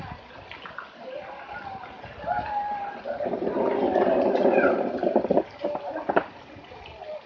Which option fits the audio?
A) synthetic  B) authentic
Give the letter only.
B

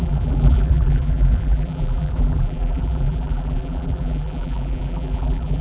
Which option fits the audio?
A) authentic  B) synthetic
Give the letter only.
B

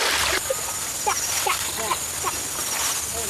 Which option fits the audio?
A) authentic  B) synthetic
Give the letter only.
A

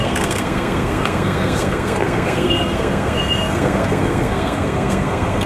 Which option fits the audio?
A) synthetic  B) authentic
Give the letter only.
A